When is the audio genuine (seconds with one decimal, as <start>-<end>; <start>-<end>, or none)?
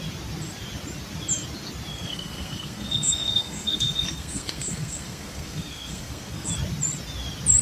0.0-1.9; 6.5-7.6